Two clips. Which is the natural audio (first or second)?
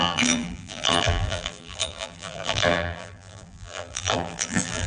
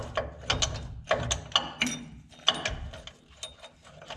second